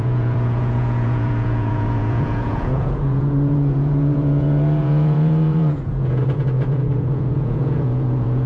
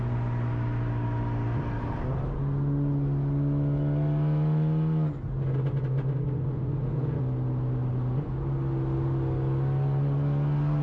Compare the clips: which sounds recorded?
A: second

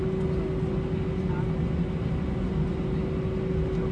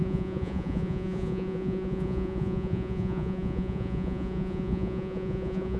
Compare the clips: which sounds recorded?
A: first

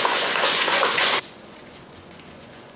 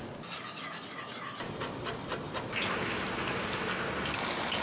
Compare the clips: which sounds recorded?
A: second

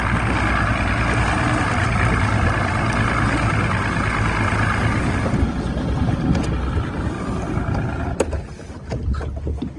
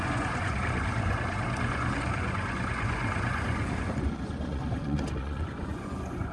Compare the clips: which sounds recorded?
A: first